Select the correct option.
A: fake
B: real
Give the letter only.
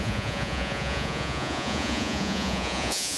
A